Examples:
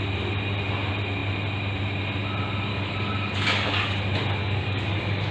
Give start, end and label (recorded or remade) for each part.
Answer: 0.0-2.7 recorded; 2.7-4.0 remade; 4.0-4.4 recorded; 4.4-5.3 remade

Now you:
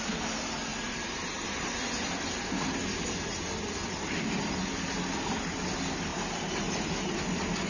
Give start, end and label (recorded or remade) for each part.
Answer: 0.0-0.7 recorded; 0.7-1.7 remade; 1.7-6.1 recorded; 6.1-6.7 remade; 6.7-7.7 recorded